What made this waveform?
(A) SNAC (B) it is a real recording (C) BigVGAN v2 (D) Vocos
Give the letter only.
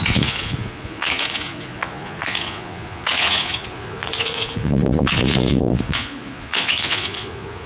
D